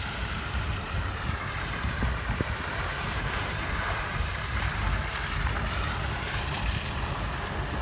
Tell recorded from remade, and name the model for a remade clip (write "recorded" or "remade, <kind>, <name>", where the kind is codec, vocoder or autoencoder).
remade, vocoder, BigVGAN v2